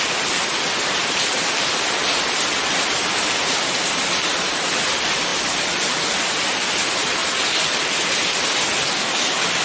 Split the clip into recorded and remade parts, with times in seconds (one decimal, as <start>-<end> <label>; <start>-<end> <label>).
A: 0.0-9.6 recorded

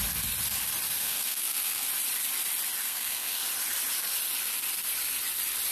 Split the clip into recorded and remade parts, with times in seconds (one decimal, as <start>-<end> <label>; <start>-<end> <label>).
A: 0.0-1.0 recorded; 1.0-1.9 remade; 1.9-2.8 recorded; 2.8-3.4 remade; 3.4-5.7 recorded